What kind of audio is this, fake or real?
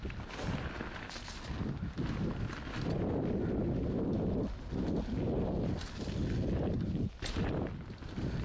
real